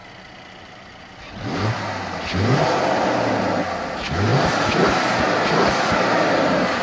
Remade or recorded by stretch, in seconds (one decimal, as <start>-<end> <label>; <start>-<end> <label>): 0.0-6.8 recorded